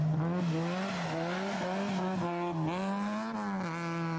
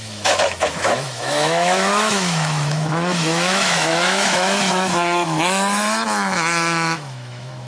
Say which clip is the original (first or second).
first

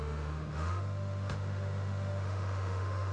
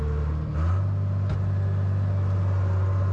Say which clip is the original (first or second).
second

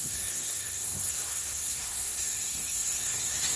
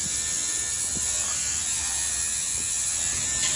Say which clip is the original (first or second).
second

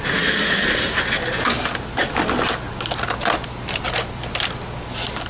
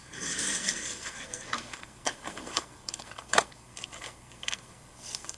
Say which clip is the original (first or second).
first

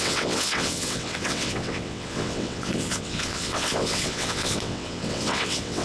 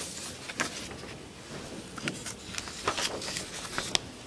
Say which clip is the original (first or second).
second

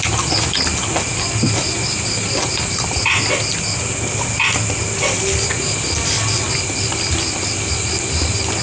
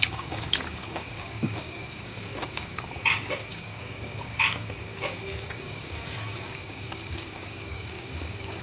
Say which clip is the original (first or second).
first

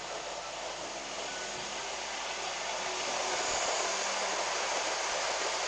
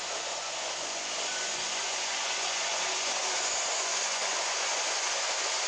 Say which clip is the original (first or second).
first